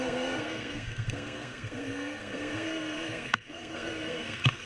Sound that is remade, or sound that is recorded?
remade